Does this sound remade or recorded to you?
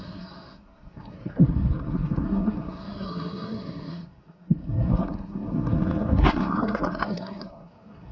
remade